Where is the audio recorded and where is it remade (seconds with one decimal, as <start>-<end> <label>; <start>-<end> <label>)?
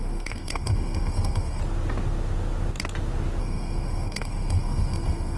0.0-1.6 remade; 1.6-3.4 recorded; 3.4-5.4 remade